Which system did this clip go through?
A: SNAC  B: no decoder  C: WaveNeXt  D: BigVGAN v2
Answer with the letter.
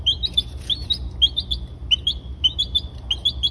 B